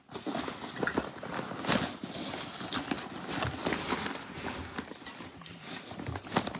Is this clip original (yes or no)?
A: yes